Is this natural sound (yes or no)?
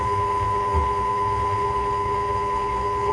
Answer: no